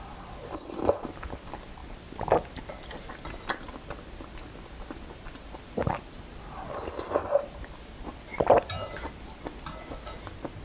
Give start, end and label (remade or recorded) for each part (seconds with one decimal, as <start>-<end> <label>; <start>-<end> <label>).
0.0-10.6 recorded